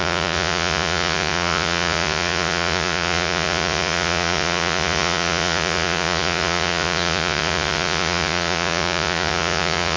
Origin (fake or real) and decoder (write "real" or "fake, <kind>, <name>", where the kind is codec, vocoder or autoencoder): fake, vocoder, Vocos